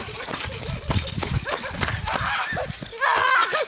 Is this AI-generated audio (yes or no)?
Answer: no